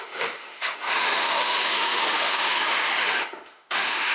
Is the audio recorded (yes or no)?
no